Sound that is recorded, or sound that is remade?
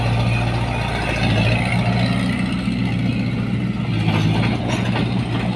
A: recorded